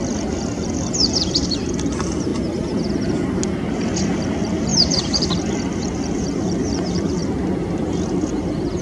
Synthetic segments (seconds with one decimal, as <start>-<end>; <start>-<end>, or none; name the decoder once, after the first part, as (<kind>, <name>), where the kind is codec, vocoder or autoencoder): 4.7-5.9 (vocoder, BigVGAN v2); 7.2-7.9